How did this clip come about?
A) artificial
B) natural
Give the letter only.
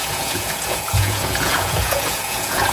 A